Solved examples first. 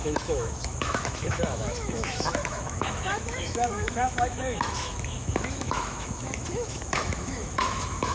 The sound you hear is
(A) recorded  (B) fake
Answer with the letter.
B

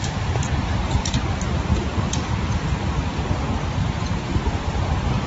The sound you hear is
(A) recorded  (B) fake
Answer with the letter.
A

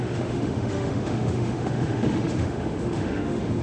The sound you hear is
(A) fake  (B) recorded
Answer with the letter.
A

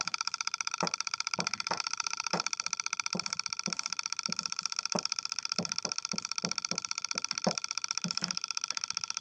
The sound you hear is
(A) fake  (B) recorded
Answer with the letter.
A